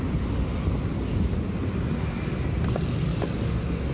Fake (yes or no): no